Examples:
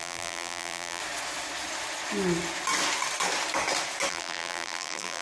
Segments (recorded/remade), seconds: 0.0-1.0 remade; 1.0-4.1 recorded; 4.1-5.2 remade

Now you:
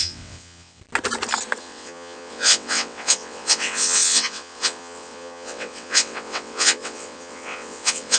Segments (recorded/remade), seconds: 0.0-0.8 remade; 0.8-1.6 recorded; 1.6-8.2 remade

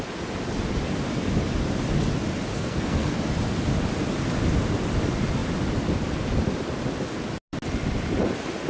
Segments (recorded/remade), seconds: 0.0-2.5 recorded; 2.5-3.1 remade; 3.1-8.7 recorded

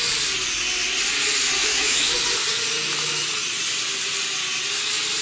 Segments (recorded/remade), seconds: 0.0-1.6 recorded; 1.6-2.1 remade; 2.1-5.2 recorded

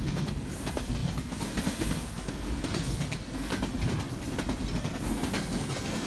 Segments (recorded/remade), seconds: 0.0-3.5 remade; 3.5-4.8 recorded; 4.8-6.1 remade